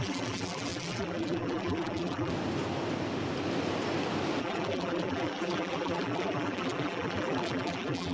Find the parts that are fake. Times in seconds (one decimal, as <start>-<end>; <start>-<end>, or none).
0.0-2.3; 4.4-8.1